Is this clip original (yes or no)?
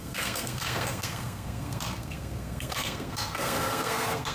no